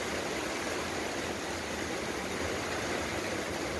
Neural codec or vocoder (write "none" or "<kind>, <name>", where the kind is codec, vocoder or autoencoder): none